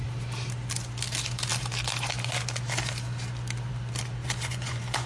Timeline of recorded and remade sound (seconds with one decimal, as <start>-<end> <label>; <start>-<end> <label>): 0.0-4.2 recorded; 4.2-5.1 remade